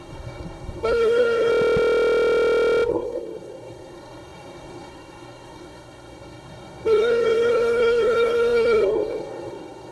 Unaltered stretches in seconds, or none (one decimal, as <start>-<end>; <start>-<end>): 1.5-2.9